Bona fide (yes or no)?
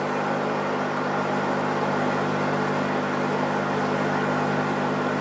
yes